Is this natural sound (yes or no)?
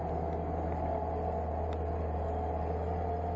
yes